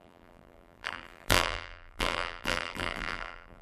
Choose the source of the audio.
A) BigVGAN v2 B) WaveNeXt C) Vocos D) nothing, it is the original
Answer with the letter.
A